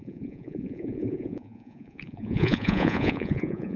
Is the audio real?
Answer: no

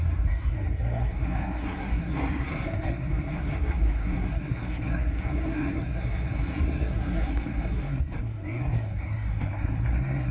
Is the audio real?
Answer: no